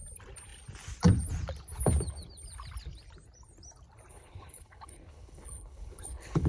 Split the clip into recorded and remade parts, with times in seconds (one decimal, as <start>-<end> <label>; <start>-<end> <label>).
0.0-4.1 recorded; 4.1-6.5 remade